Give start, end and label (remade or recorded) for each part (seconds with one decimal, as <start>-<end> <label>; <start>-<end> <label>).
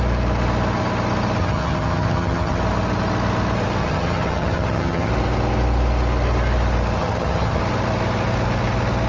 0.0-1.4 recorded; 1.4-2.6 remade; 2.6-3.8 recorded; 3.8-5.1 remade; 5.1-7.0 recorded; 7.0-7.6 remade; 7.6-9.1 recorded